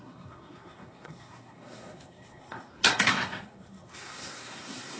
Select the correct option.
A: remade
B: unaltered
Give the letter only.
A